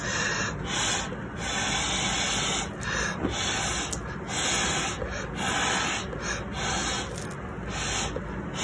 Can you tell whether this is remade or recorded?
recorded